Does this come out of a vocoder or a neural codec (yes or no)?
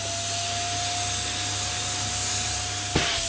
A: no